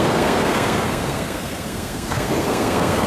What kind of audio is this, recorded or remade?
remade